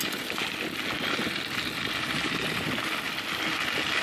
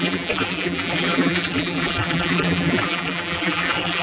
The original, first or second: first